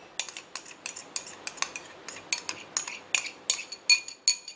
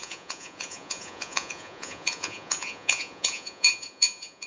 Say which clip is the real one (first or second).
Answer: first